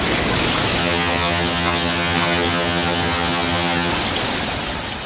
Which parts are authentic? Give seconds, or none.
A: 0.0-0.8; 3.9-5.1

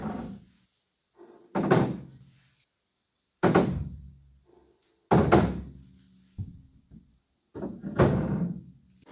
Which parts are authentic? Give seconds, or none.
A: 4.1-9.1

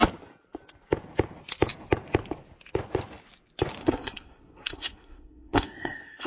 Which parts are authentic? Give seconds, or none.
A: 0.0-3.8

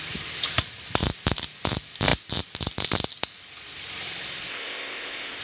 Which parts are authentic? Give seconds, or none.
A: 0.0-4.5